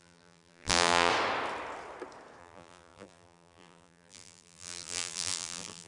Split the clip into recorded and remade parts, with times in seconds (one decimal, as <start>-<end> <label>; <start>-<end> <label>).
0.0-1.1 remade; 1.1-2.4 recorded; 2.4-5.9 remade